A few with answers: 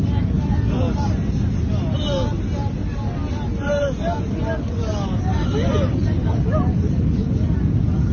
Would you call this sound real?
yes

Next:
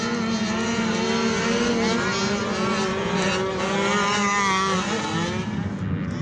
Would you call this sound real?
yes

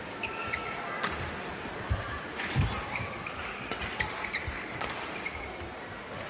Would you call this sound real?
yes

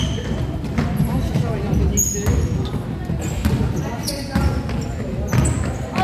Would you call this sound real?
yes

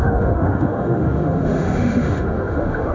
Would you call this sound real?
no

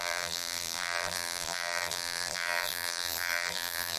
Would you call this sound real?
no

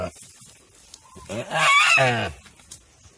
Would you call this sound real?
yes